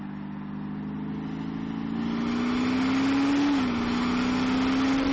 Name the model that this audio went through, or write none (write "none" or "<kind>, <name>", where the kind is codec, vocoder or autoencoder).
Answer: none